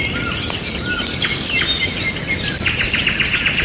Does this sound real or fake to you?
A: real